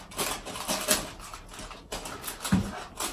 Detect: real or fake real